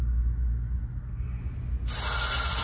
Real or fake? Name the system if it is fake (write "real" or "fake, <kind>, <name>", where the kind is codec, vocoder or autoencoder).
real